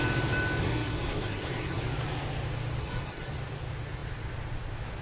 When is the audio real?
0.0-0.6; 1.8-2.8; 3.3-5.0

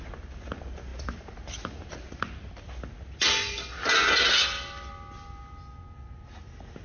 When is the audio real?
0.0-6.8

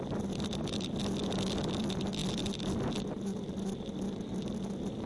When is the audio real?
0.0-5.1

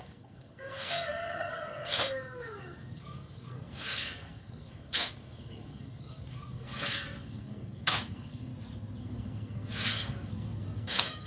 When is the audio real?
8.5-9.0

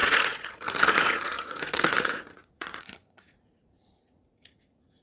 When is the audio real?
none

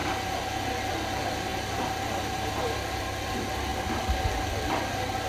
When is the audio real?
0.0-1.5; 2.5-5.3

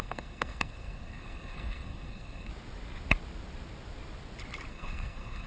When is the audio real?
2.5-4.7